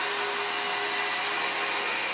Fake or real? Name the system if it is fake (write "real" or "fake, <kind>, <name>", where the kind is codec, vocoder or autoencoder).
real